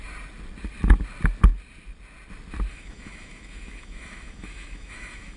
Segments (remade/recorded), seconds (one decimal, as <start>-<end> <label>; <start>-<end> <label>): 0.0-2.7 recorded; 2.7-5.4 remade